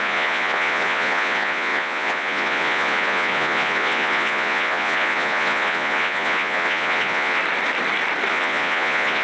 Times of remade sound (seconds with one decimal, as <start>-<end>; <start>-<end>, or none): 0.0-7.4; 8.3-9.2